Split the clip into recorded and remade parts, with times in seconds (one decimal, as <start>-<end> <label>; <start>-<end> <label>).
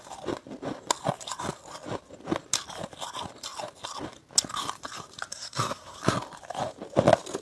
0.0-5.3 recorded; 5.3-6.0 remade; 6.0-7.4 recorded